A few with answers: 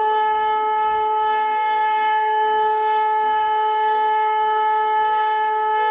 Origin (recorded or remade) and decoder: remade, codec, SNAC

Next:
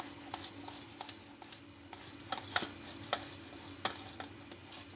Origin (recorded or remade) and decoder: recorded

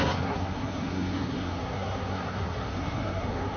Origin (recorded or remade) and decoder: remade, codec, SNAC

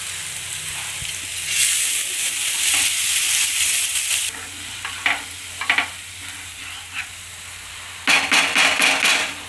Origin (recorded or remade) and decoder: recorded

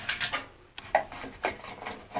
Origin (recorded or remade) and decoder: recorded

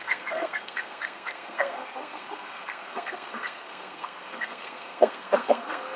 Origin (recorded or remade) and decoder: remade, codec, SNAC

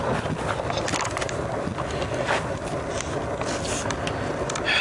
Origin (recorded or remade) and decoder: recorded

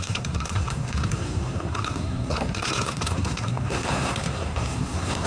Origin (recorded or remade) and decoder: remade, codec, SNAC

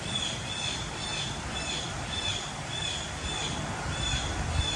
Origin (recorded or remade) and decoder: recorded